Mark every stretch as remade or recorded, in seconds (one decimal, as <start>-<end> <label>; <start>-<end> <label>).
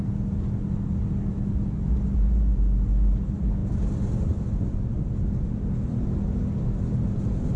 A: 0.0-7.6 recorded